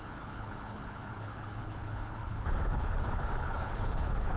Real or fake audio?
fake